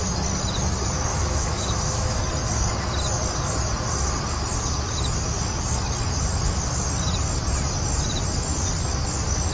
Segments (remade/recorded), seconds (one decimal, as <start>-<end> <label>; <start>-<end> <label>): 0.0-1.1 recorded; 1.1-2.2 remade; 2.2-9.5 recorded